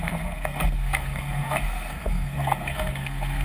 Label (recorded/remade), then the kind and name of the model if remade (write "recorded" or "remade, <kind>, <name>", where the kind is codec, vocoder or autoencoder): remade, codec, SNAC